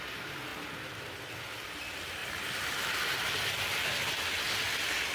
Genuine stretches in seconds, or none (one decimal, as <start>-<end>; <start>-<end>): 0.0-5.1